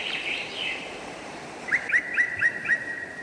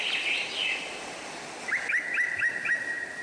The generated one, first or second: first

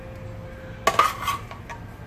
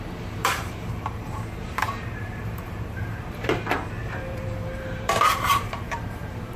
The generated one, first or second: second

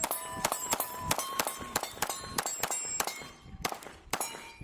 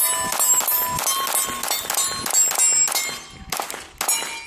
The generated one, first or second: first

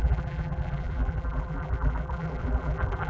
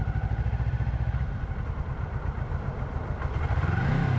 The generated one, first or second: first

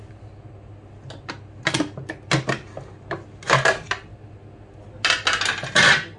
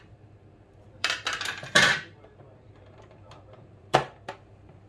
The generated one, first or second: second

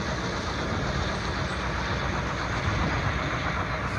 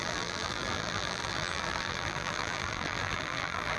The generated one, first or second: second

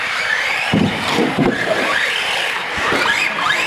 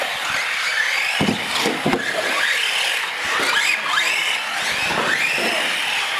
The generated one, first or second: first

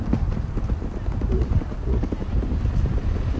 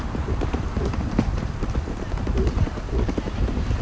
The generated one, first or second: second